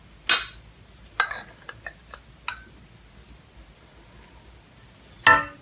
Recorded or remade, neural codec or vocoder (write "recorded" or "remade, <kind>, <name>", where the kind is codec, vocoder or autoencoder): recorded